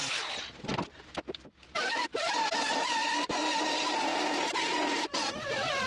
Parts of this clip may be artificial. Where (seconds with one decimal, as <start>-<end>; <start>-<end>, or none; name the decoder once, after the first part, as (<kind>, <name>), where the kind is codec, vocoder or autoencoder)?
3.0-3.6 (vocoder, Vocos)

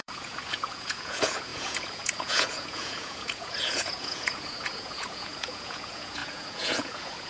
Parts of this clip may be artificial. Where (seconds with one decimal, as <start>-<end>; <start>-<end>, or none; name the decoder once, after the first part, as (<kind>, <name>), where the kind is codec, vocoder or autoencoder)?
0.0-7.3 (vocoder, Vocos)

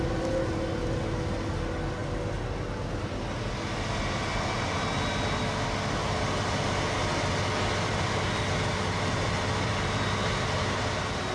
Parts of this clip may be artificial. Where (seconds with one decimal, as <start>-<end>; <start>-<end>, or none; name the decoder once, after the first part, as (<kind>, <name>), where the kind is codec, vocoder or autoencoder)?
none

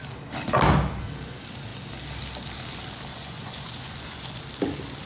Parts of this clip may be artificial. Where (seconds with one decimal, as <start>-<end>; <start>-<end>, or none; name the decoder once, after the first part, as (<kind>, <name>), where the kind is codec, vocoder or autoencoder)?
3.1-4.4 (vocoder, Vocos)

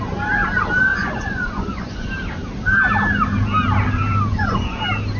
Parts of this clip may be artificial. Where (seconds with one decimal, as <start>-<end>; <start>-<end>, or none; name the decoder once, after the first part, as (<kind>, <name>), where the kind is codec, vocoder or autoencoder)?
0.9-2.1 (vocoder, Vocos); 4.3-4.8

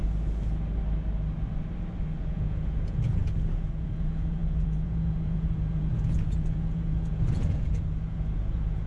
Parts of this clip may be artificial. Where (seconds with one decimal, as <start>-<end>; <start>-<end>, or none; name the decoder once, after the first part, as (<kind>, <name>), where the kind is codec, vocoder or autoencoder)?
2.2-8.9 (vocoder, Vocos)

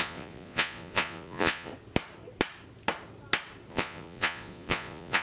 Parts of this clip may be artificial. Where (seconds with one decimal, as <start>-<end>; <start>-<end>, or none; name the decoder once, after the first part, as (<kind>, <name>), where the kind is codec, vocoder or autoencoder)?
0.0-1.7 (vocoder, Vocos); 3.7-5.2